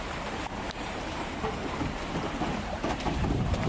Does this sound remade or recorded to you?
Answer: remade